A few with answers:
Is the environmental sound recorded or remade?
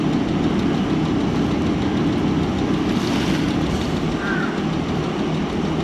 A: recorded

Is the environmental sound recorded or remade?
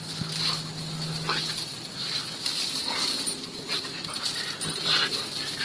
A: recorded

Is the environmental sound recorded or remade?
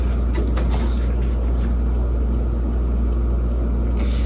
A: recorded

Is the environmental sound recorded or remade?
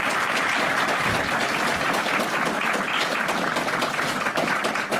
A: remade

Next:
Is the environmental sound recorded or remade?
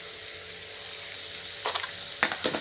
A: recorded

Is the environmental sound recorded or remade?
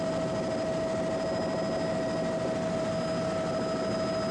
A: recorded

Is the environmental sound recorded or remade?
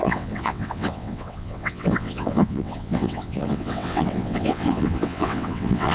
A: remade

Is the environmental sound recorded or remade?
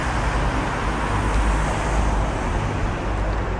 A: recorded